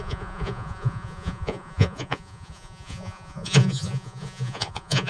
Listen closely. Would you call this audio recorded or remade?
remade